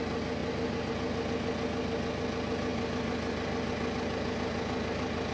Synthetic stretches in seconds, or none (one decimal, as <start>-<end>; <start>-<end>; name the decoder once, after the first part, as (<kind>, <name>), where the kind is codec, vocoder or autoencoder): none